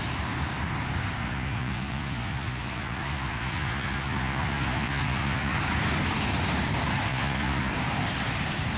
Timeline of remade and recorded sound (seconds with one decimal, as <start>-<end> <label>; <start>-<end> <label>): 0.0-1.2 recorded; 1.2-5.6 remade; 5.6-7.1 recorded; 7.1-7.7 remade; 7.7-8.8 recorded